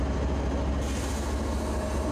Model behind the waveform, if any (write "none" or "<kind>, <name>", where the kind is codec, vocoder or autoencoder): none